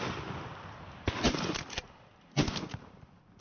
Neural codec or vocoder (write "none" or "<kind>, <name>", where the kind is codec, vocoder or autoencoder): none